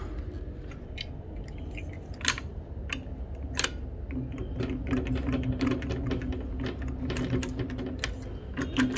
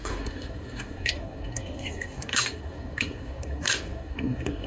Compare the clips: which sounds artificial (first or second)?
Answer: second